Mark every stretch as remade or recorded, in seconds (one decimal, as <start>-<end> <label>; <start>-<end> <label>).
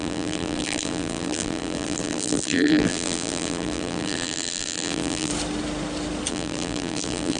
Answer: 0.0-5.3 remade; 5.3-6.3 recorded; 6.3-7.4 remade